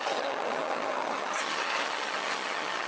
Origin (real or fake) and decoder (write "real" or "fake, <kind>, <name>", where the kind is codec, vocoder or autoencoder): fake, vocoder, HiFi-GAN